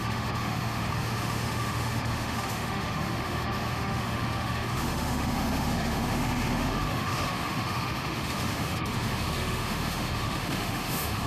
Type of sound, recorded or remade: remade